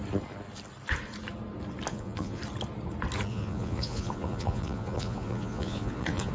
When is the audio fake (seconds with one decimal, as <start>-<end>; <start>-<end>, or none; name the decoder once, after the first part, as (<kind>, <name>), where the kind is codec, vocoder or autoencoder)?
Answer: 1.9-2.4 (vocoder, Vocos); 3.3-6.3